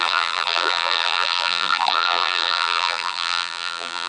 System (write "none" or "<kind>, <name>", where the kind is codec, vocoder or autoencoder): vocoder, BigVGAN v2